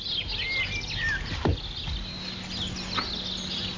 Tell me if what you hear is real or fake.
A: real